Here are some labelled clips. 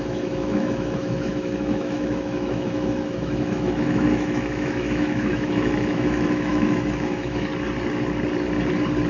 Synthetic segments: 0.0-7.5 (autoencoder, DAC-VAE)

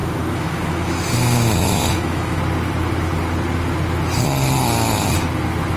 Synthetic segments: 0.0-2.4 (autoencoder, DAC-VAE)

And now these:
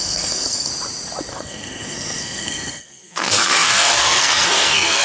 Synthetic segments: 0.0-0.7 (codec, SNAC); 1.3-5.0